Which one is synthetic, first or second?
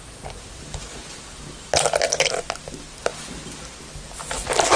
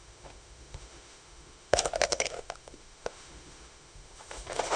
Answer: second